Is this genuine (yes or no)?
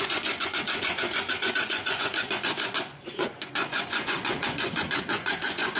no